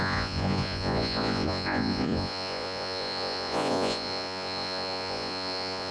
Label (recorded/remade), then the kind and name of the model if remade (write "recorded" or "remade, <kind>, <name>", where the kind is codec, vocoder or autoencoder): remade, vocoder, Vocos